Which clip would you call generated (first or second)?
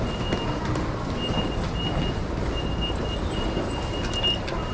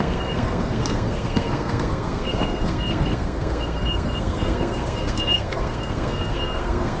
second